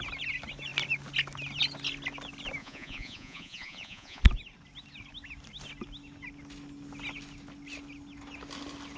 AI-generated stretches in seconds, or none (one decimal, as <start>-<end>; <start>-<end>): 2.6-4.2